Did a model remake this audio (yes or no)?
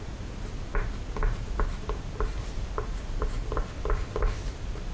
no